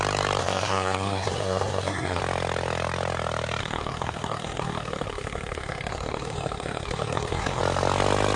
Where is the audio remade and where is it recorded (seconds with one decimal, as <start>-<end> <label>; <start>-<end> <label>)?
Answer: 0.0-0.4 recorded; 0.4-2.2 remade; 2.2-3.6 recorded; 3.6-7.6 remade; 7.6-8.4 recorded